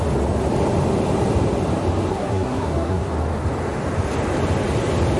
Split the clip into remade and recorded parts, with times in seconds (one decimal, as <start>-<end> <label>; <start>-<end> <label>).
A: 0.0-2.1 recorded; 2.1-3.1 remade; 3.1-5.2 recorded

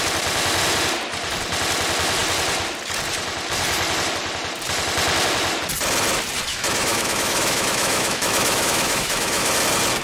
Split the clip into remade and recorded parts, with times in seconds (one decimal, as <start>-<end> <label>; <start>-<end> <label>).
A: 0.0-6.5 recorded; 6.5-9.5 remade; 9.5-10.0 recorded

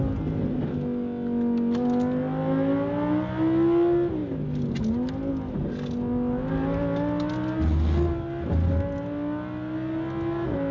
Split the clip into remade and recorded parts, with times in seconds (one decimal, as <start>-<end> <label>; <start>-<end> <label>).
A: 0.0-10.7 recorded